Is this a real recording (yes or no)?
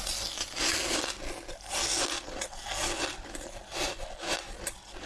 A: yes